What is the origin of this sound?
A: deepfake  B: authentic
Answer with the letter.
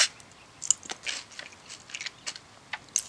B